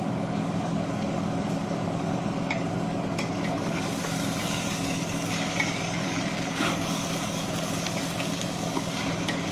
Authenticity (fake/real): fake